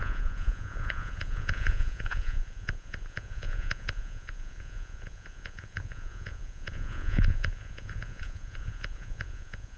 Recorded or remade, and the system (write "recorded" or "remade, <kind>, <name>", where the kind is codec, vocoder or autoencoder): remade, vocoder, Vocos